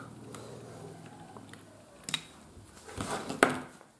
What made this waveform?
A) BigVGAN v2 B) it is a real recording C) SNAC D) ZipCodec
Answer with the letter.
B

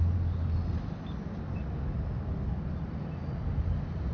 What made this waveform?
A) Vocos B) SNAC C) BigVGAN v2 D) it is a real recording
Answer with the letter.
D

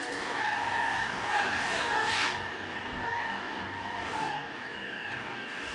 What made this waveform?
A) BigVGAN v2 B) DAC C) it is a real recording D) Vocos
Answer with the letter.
B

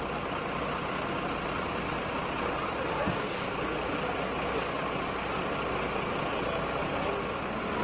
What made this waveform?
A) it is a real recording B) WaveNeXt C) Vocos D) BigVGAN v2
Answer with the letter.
A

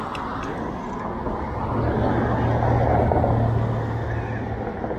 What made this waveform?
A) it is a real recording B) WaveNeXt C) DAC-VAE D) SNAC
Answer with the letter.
A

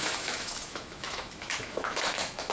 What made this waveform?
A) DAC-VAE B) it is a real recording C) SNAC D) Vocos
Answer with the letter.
A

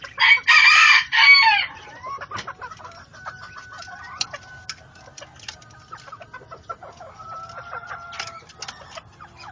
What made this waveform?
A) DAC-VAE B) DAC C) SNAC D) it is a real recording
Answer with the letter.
D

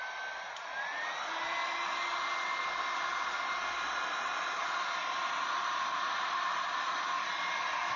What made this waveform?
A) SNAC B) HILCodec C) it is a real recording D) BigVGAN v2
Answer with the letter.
C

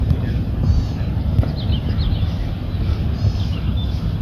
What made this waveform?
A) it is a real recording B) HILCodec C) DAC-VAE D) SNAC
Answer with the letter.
A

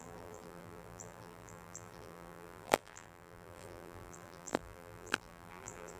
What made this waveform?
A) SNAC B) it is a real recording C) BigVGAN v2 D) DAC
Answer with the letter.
C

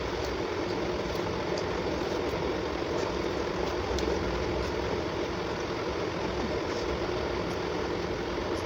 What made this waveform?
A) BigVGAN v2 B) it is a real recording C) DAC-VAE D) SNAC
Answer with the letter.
B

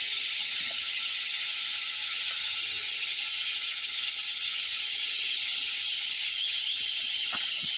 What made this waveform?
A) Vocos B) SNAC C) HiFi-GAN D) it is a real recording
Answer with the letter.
C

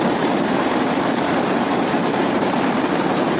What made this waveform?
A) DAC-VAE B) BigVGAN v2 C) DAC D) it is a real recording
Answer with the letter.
B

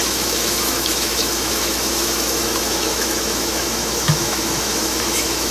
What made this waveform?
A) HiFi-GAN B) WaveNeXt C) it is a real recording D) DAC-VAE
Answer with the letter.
D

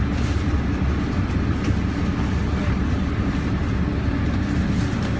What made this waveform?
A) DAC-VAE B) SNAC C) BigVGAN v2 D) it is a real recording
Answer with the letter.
D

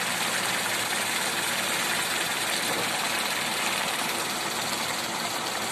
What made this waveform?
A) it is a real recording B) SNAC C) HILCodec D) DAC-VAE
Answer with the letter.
A